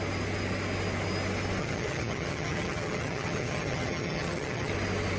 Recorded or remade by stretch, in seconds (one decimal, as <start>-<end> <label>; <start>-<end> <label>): 0.0-1.6 recorded; 1.6-4.7 remade; 4.7-5.2 recorded